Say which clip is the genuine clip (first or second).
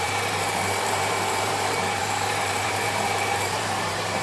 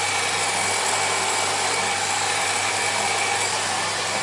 second